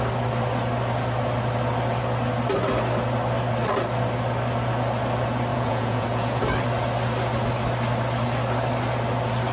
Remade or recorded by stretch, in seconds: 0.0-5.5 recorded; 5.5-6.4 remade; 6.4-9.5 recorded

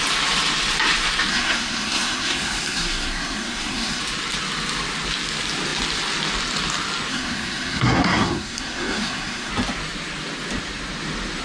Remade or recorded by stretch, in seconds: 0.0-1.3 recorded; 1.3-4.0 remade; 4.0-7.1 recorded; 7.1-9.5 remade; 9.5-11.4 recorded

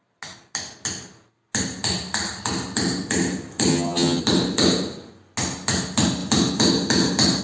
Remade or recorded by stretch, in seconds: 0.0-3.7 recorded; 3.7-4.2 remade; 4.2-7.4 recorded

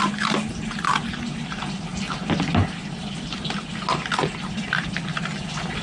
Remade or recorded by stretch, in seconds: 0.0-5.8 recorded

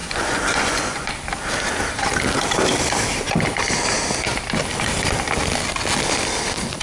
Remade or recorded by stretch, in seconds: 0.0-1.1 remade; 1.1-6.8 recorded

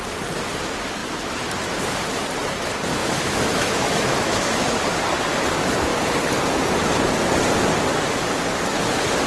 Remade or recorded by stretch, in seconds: 0.0-3.0 recorded; 3.0-4.6 remade; 4.6-9.3 recorded

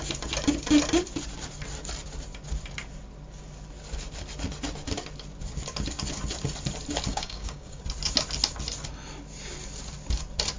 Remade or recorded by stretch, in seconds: 0.0-7.1 recorded; 7.1-7.8 remade; 7.8-10.6 recorded

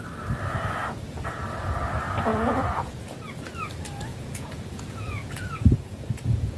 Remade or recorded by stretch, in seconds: 0.0-2.3 recorded; 2.3-3.0 remade; 3.0-4.1 recorded; 4.1-6.6 remade